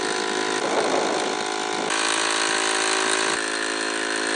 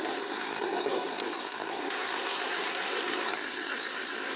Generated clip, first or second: second